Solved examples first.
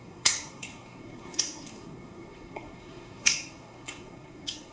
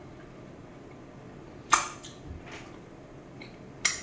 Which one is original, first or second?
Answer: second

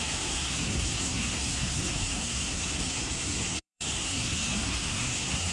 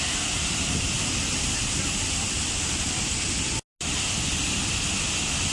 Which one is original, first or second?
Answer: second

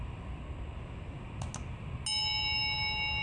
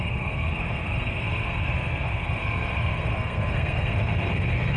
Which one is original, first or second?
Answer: first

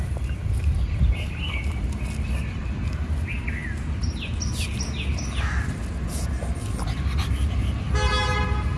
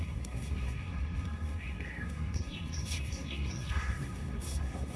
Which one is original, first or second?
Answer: first